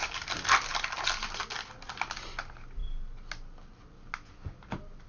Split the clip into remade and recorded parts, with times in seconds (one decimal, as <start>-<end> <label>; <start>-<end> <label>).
0.0-5.1 recorded